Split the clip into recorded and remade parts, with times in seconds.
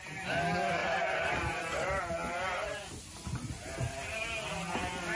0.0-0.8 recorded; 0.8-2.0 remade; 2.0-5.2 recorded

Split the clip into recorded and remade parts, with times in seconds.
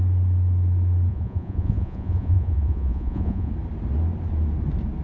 0.0-1.1 recorded; 1.1-3.5 remade; 3.5-5.0 recorded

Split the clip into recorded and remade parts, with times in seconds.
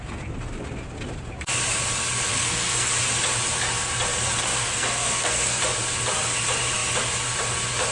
0.0-2.3 recorded; 2.3-2.9 remade; 2.9-4.4 recorded; 4.4-5.6 remade; 5.6-7.9 recorded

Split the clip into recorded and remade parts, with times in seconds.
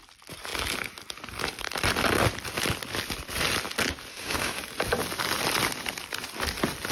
0.0-4.1 recorded; 4.1-4.6 remade; 4.6-6.9 recorded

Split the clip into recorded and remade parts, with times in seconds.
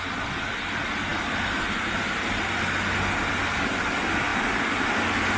0.0-5.4 recorded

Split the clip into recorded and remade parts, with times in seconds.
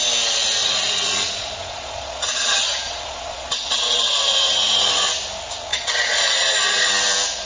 0.0-0.6 recorded; 0.6-5.1 remade; 5.1-5.7 recorded; 5.7-6.9 remade; 6.9-7.5 recorded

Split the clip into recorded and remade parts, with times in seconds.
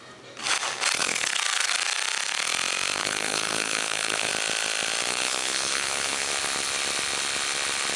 0.0-1.0 recorded; 1.0-1.7 remade; 1.7-3.0 recorded; 3.0-4.3 remade; 4.3-5.1 recorded; 5.1-6.3 remade; 6.3-8.0 recorded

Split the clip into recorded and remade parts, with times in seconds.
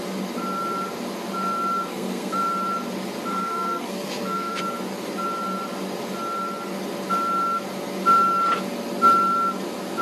0.0-1.9 recorded; 1.9-2.4 remade; 2.4-3.3 recorded; 3.3-4.6 remade; 4.6-10.0 recorded